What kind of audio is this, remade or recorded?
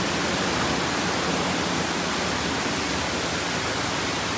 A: recorded